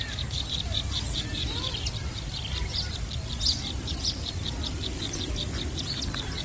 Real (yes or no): yes